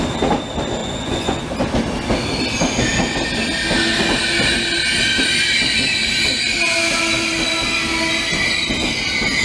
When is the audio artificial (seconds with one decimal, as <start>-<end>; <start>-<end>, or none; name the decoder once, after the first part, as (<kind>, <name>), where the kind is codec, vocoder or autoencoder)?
0.8-1.4 (vocoder, Vocos)

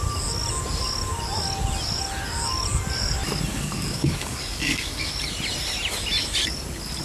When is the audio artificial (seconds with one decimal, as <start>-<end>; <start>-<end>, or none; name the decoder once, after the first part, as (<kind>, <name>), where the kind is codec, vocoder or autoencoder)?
3.5-5.1 (codec, DAC)

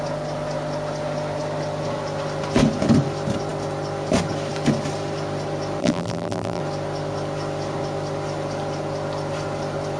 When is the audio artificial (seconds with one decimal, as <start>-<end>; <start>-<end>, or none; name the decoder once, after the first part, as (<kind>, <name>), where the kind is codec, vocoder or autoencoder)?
5.8-6.6 (vocoder, BigVGAN v2)

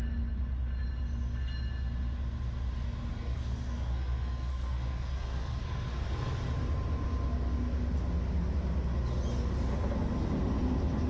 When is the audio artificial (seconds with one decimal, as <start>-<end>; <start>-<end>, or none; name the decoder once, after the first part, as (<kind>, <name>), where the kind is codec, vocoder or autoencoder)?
3.1-6.3 (codec, SNAC)